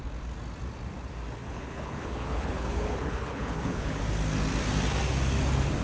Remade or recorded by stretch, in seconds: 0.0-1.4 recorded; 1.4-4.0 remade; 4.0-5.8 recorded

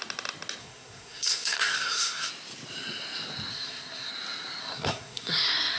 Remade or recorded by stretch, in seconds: 0.0-0.6 recorded; 0.6-2.3 remade; 2.3-3.5 recorded; 3.5-4.1 remade; 4.1-4.6 recorded; 4.6-5.8 remade

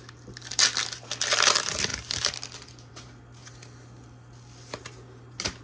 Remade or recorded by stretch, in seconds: 0.0-5.6 recorded

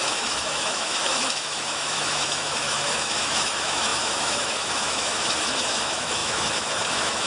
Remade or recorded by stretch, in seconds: 0.0-7.3 remade

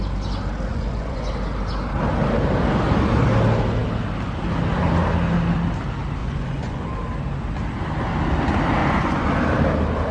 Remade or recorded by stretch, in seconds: 0.0-0.7 recorded; 0.7-1.3 remade; 1.3-6.2 recorded; 6.2-6.8 remade; 6.8-8.8 recorded; 8.8-9.3 remade; 9.3-10.1 recorded

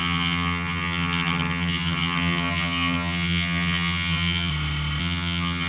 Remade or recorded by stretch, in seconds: 0.0-4.5 remade; 4.5-5.0 recorded; 5.0-5.7 remade